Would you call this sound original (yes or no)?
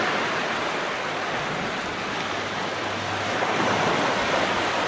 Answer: yes